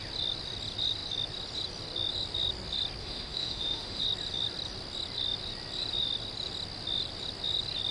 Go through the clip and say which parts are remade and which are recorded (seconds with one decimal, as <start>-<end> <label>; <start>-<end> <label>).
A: 0.0-3.0 recorded; 3.0-4.0 remade; 4.0-7.9 recorded